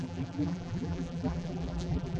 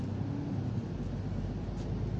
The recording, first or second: second